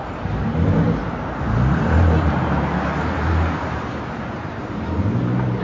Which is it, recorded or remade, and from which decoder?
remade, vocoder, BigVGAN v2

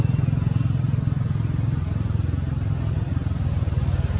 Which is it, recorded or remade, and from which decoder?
recorded